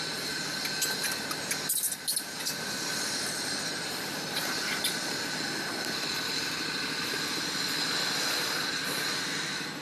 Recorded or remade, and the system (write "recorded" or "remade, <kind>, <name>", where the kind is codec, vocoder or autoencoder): recorded